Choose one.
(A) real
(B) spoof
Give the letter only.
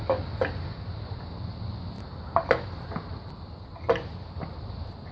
A